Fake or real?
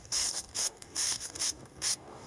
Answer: fake